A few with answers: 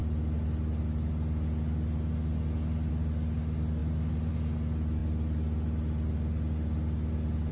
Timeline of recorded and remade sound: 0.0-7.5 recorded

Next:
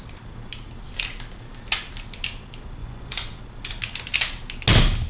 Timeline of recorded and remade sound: 0.0-2.8 recorded; 2.8-3.4 remade; 3.4-5.1 recorded

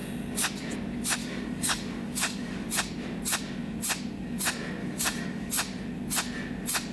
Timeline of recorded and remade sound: 0.0-1.2 recorded; 1.2-2.7 remade; 2.7-4.8 recorded; 4.8-5.5 remade; 5.5-6.9 recorded

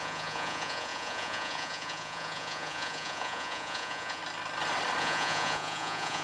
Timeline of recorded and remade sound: 0.0-4.2 remade; 4.2-5.0 recorded; 5.0-6.2 remade

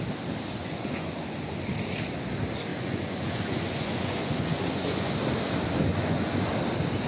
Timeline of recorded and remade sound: 0.0-0.6 recorded; 0.6-1.5 remade; 1.5-2.7 recorded; 2.7-5.1 remade; 5.1-5.9 recorded; 5.9-6.5 remade; 6.5-7.1 recorded